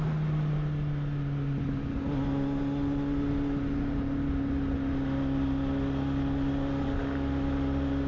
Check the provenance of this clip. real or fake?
real